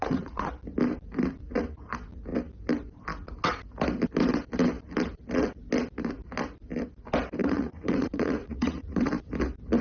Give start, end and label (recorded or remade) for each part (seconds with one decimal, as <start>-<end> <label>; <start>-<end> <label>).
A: 0.0-0.5 remade; 0.5-7.4 recorded; 7.4-9.1 remade; 9.1-9.8 recorded

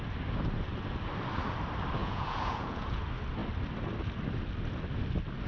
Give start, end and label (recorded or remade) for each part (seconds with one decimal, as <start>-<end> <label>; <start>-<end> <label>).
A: 0.0-2.0 recorded; 2.0-3.0 remade; 3.0-5.5 recorded

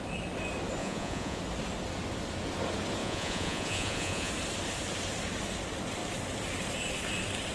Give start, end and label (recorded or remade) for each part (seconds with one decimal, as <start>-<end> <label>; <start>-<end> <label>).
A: 0.0-0.8 recorded; 0.8-1.4 remade; 1.4-3.0 recorded; 3.0-4.3 remade; 4.3-7.5 recorded

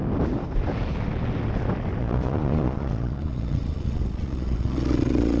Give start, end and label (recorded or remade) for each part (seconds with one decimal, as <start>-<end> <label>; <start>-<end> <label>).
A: 0.0-2.0 recorded; 2.0-5.4 remade

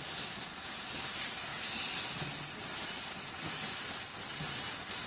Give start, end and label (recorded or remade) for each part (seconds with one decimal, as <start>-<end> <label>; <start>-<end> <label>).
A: 0.0-5.1 recorded